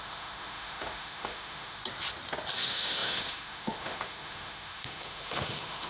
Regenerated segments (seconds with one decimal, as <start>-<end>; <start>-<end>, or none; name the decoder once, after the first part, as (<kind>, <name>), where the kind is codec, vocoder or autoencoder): 0.0-1.8 (autoencoder, DAC-VAE); 2.6-5.9